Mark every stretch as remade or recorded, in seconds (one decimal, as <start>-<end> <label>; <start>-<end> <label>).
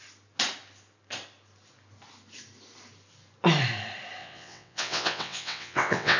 0.0-4.2 recorded; 4.2-6.2 remade